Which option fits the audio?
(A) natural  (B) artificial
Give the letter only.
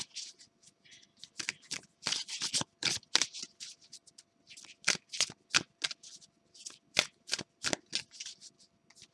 A